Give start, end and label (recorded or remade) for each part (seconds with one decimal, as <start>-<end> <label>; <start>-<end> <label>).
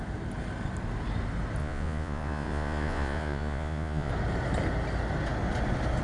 0.0-1.6 recorded; 1.6-4.1 remade; 4.1-6.0 recorded